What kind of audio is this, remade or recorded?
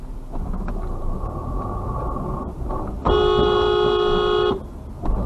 recorded